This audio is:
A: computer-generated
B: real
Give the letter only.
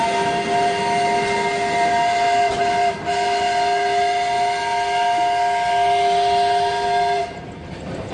B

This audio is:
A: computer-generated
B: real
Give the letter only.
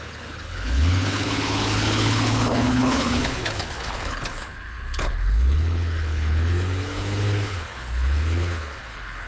A